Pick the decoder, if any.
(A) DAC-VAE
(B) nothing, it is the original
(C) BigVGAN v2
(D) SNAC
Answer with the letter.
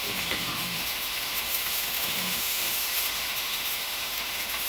A